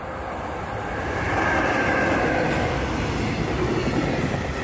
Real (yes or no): yes